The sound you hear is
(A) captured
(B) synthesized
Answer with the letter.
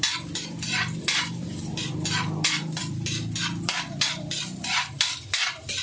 B